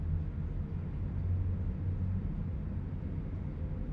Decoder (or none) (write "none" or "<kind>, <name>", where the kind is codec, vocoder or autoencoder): none